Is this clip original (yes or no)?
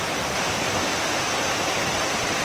yes